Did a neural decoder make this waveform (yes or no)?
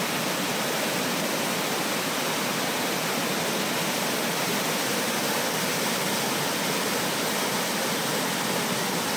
no